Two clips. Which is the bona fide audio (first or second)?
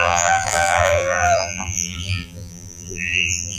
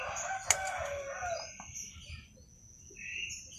second